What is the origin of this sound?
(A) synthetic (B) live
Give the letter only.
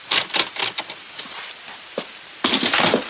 B